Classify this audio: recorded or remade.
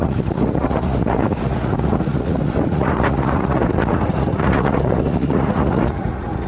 remade